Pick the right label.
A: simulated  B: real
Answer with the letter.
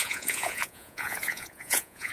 A